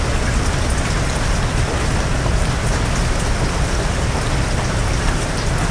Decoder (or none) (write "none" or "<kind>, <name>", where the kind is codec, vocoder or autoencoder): none